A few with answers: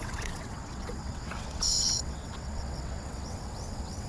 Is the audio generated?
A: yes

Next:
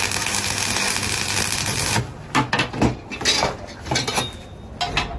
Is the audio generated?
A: no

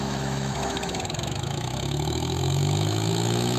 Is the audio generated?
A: yes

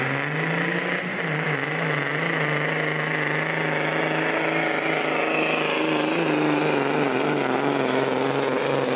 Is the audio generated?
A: no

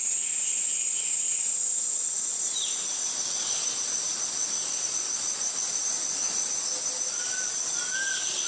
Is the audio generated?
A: no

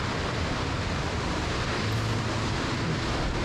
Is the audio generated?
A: no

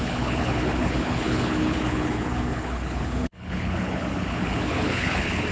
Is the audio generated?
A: yes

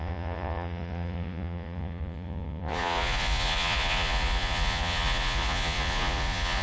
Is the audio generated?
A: yes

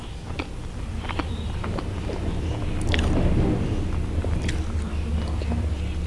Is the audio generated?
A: no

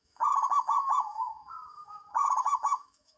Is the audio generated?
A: yes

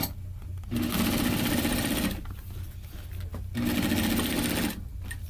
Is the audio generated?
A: no